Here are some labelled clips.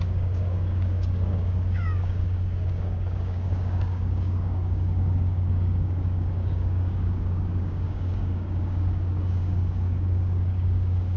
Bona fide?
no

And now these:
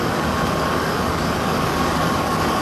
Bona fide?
no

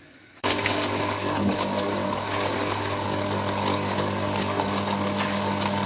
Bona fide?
no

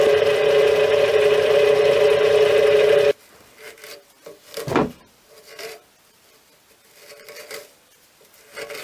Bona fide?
yes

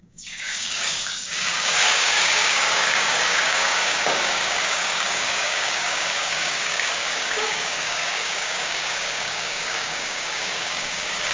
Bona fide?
no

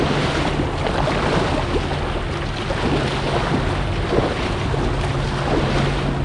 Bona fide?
yes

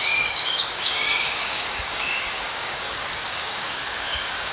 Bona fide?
no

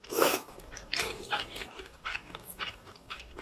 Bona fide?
no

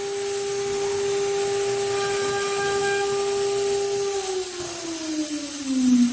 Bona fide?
yes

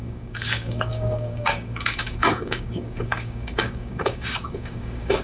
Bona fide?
no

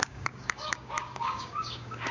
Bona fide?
no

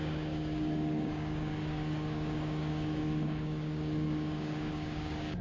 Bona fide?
no